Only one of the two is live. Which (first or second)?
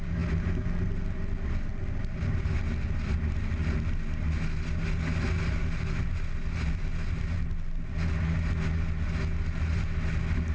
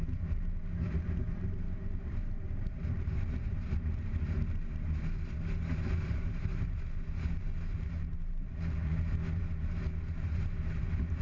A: first